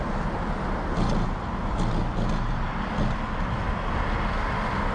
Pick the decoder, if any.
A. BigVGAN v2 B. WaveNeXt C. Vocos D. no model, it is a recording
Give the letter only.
D